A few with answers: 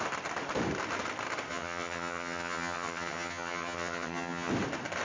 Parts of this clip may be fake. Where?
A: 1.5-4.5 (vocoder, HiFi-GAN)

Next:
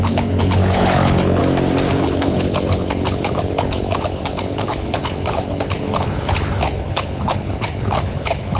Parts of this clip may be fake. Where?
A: 0.0-1.4 (codec, HILCodec); 1.9-8.6